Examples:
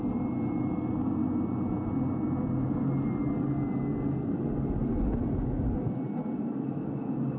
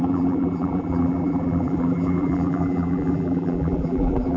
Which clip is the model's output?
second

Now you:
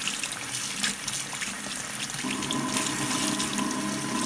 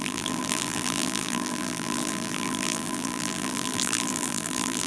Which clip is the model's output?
second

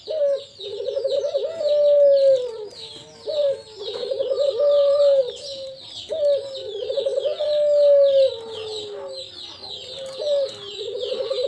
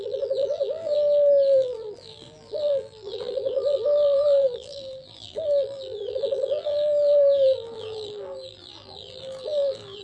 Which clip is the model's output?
second